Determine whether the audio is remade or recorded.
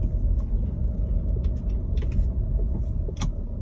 recorded